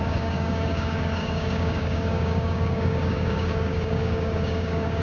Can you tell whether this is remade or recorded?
remade